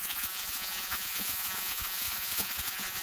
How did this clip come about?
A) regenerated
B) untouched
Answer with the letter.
A